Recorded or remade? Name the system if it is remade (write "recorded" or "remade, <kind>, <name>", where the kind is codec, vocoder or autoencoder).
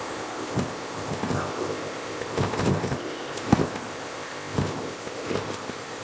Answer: remade, codec, ZipCodec